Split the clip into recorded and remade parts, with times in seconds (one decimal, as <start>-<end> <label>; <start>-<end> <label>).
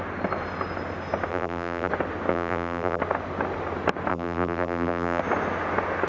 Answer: 0.0-1.3 recorded; 1.3-1.9 remade; 1.9-2.3 recorded; 2.3-3.0 remade; 3.0-4.1 recorded; 4.1-5.2 remade; 5.2-6.1 recorded